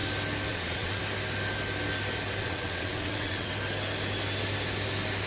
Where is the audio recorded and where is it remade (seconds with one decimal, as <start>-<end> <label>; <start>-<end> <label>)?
0.0-0.5 recorded; 0.5-1.0 remade; 1.0-2.4 recorded; 2.4-3.5 remade; 3.5-5.3 recorded